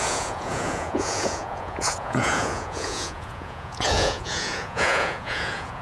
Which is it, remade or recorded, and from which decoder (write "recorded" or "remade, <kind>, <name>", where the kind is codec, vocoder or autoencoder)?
remade, vocoder, Vocos